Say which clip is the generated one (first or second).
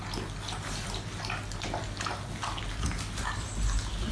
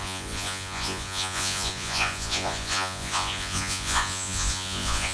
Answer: second